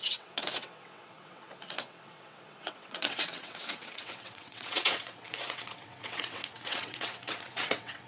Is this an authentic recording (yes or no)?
no